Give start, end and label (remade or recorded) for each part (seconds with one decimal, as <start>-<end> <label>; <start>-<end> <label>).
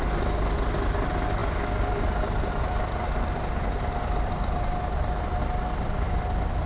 0.0-6.7 recorded